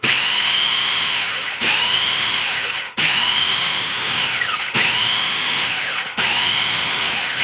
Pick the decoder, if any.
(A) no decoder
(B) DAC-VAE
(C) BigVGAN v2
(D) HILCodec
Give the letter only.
B